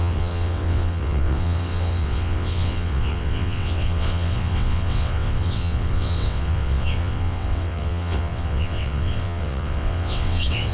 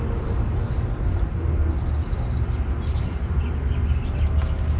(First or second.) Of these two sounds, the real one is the second